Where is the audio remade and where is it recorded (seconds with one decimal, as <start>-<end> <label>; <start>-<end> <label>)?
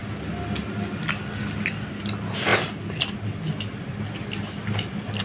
0.0-5.2 recorded